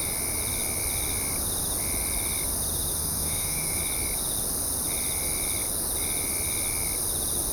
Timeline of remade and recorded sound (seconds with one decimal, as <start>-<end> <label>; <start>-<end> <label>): 0.0-3.0 recorded; 3.0-3.8 remade; 3.8-7.5 recorded